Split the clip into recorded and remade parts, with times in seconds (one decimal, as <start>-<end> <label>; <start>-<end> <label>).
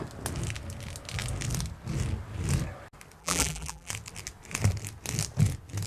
0.0-3.2 recorded; 3.2-3.9 remade; 3.9-5.9 recorded